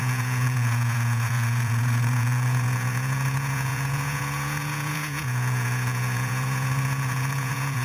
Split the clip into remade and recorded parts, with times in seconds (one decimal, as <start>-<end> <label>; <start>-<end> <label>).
0.0-7.8 remade